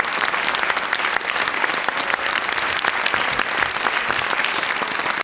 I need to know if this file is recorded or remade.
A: recorded